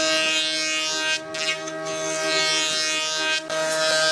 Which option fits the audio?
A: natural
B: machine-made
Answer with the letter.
A